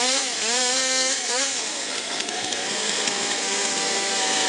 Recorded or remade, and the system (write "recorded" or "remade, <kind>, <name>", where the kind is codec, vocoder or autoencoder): remade, codec, SNAC